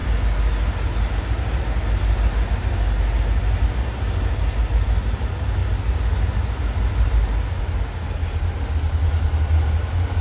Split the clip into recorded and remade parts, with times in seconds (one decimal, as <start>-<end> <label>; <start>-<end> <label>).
0.0-10.2 recorded